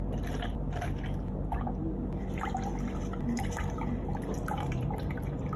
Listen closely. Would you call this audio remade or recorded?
recorded